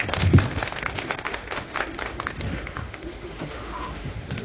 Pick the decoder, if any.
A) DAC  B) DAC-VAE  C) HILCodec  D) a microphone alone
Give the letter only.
B